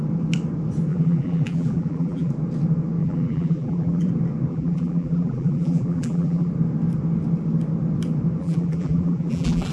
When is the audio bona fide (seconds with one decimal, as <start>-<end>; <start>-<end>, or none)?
0.0-0.9; 2.3-3.0; 4.1-4.5; 6.5-8.4

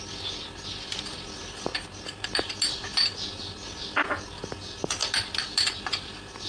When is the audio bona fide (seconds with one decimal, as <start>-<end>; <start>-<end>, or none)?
0.0-1.7; 2.3-5.0; 5.8-6.5

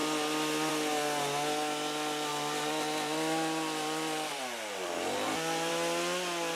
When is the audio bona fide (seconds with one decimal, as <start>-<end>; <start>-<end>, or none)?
0.0-2.3; 5.7-6.6

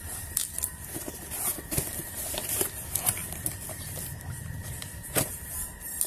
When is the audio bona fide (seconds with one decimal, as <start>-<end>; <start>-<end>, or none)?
0.4-1.3

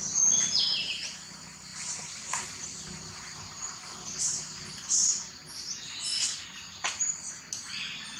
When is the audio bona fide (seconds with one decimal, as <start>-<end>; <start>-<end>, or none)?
0.0-1.7; 3.1-8.2